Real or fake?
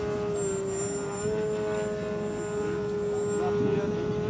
real